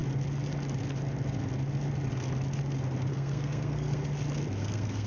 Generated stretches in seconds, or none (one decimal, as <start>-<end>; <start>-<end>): 3.1-4.0; 4.6-5.1